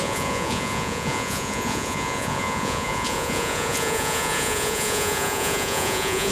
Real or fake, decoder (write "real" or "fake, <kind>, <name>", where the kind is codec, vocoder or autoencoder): fake, vocoder, Vocos